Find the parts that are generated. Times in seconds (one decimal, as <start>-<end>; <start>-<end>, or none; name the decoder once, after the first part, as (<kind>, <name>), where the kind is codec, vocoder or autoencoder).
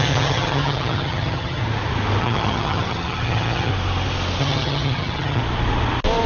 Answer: 0.0-1.6 (vocoder, HiFi-GAN); 2.2-3.7; 4.4-5.4